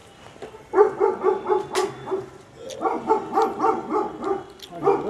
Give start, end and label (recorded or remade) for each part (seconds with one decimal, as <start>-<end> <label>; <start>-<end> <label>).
0.0-5.1 recorded